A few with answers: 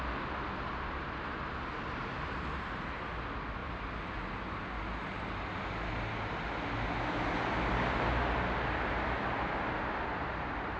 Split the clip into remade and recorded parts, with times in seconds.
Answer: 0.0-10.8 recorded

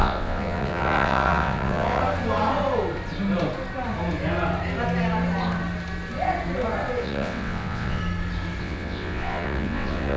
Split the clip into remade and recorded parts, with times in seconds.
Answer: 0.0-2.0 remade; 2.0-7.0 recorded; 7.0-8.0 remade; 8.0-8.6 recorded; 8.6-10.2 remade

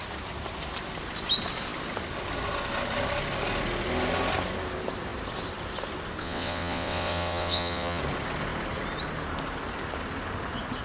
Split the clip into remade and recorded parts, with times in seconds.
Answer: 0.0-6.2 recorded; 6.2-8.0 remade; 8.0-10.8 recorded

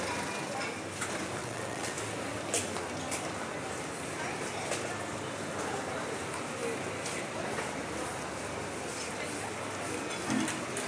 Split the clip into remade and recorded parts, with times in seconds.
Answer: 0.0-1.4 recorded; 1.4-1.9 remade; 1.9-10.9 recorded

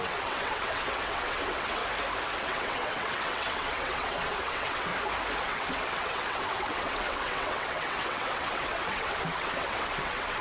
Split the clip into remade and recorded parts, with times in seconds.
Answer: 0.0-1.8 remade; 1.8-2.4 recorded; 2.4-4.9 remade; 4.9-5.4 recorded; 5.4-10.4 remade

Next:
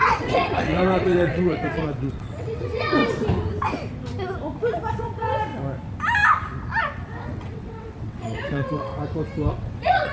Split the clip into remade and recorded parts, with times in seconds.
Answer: 0.0-3.0 remade; 3.0-4.9 recorded; 4.9-5.5 remade; 5.5-6.8 recorded; 6.8-8.9 remade; 8.9-9.5 recorded; 9.5-10.1 remade

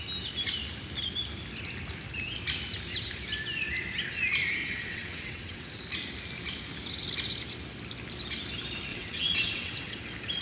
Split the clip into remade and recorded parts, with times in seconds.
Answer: 0.0-4.6 recorded; 4.6-5.8 remade; 5.8-8.9 recorded; 8.9-10.0 remade; 10.0-10.4 recorded

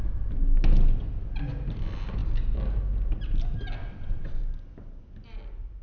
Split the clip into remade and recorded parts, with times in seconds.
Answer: 0.0-3.8 recorded; 3.8-4.4 remade; 4.4-5.8 recorded